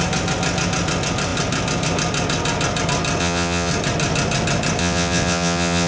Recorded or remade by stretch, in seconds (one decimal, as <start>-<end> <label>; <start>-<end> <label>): 0.0-3.2 recorded; 3.2-3.7 remade; 3.7-4.8 recorded; 4.8-5.9 remade